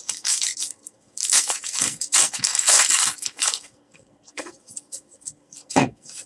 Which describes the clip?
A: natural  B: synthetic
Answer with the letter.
B